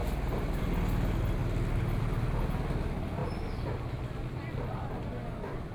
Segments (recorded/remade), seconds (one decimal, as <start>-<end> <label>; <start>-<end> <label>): 0.0-5.7 recorded

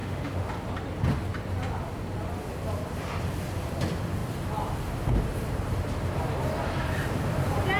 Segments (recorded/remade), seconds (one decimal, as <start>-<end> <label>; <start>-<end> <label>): 0.0-0.5 remade; 0.5-7.8 recorded